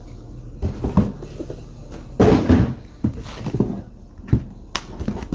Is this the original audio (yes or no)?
yes